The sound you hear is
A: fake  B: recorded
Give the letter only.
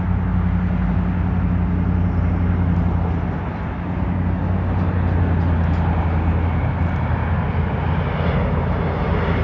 B